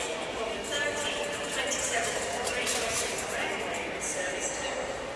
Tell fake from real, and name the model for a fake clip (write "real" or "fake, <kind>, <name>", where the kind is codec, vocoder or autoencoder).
real